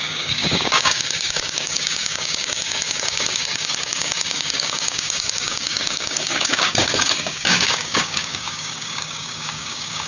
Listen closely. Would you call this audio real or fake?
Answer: fake